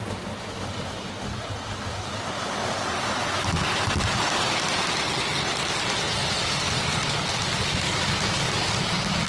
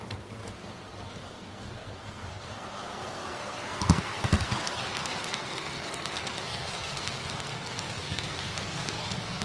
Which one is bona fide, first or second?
first